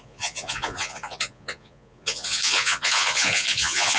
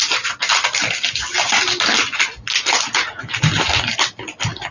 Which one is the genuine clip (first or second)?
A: second